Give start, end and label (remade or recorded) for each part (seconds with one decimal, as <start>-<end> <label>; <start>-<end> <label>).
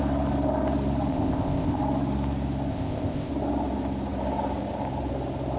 0.0-1.1 recorded; 1.1-1.8 remade; 1.8-2.7 recorded; 2.7-3.3 remade; 3.3-5.6 recorded